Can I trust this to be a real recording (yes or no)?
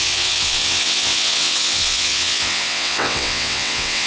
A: no